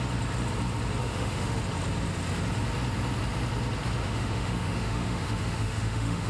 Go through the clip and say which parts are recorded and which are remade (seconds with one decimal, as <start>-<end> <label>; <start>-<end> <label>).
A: 0.0-1.0 recorded; 1.0-1.6 remade; 1.6-4.0 recorded; 4.0-6.3 remade